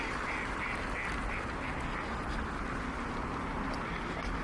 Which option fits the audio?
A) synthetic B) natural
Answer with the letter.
B